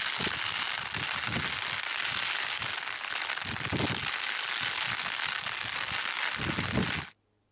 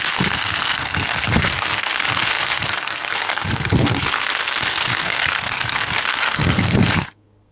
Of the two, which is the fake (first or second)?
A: second